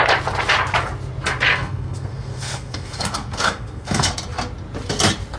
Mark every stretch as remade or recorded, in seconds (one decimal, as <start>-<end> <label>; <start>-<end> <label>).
0.0-1.5 recorded; 1.5-4.1 remade; 4.1-5.4 recorded